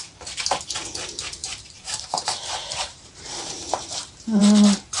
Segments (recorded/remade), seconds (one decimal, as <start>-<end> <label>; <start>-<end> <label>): 0.0-1.4 recorded; 1.4-4.4 remade; 4.4-5.0 recorded